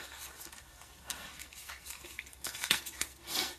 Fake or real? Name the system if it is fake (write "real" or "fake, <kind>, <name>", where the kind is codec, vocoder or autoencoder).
fake, codec, SNAC